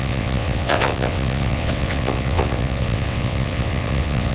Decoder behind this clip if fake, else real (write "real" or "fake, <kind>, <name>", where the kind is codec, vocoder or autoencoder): fake, vocoder, WaveNeXt